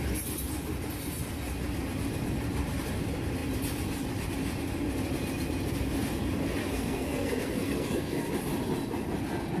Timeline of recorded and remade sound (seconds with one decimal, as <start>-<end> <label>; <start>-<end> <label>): 0.0-6.6 recorded; 6.6-8.3 remade; 8.3-9.6 recorded